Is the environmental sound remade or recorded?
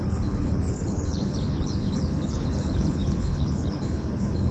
remade